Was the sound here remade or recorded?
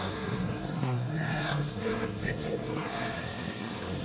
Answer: remade